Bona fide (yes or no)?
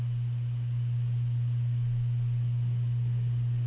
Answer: yes